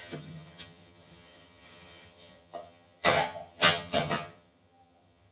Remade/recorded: remade